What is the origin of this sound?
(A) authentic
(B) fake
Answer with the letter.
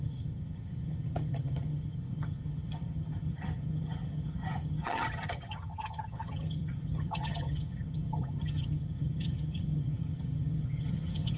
B